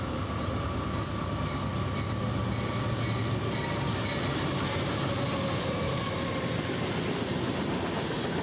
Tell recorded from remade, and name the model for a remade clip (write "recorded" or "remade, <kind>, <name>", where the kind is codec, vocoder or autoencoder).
recorded